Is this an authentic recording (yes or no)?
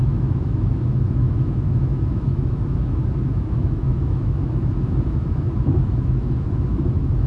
no